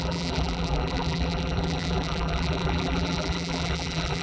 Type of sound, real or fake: fake